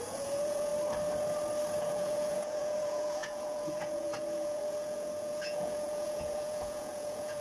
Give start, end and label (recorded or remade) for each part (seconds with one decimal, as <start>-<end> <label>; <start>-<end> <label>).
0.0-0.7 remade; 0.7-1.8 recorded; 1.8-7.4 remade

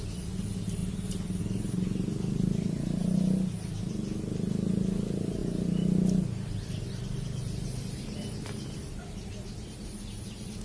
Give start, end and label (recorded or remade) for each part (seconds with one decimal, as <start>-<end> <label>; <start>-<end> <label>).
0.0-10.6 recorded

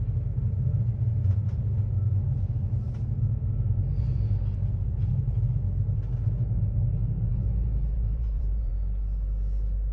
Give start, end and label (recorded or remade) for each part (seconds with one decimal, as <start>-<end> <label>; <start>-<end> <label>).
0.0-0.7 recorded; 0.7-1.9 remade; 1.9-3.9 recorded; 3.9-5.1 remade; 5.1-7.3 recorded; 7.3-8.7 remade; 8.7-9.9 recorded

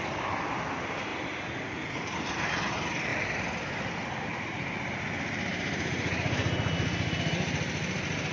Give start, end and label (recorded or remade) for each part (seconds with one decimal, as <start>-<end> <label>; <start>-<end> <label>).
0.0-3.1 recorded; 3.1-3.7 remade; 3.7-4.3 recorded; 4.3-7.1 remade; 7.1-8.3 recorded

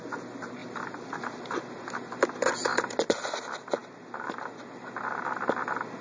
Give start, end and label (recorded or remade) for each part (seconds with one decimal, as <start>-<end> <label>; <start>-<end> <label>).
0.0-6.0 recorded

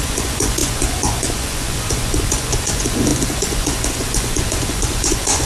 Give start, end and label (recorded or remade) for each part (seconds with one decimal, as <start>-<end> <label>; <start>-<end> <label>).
0.0-5.5 remade